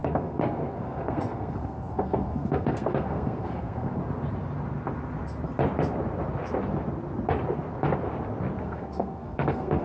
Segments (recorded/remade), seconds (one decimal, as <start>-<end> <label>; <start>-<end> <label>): 0.0-4.0 remade; 4.0-8.6 recorded; 8.6-9.8 remade